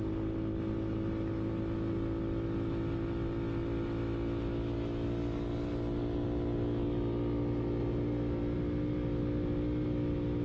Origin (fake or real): real